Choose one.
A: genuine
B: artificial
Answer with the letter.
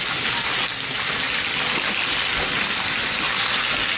A